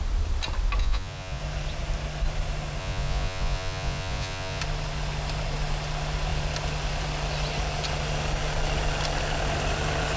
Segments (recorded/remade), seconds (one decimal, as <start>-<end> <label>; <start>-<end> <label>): 0.0-0.8 recorded; 0.8-1.4 remade; 1.4-2.8 recorded; 2.8-4.6 remade; 4.6-10.2 recorded